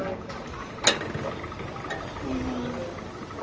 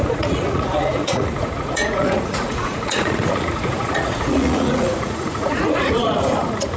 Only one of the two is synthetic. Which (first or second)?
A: second